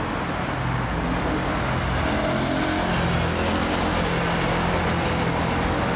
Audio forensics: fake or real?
real